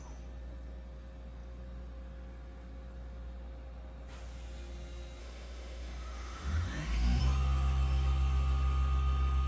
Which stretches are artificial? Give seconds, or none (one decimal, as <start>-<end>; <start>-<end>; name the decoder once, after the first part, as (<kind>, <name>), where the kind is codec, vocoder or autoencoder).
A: 5.2-7.2 (autoencoder, DAC-VAE)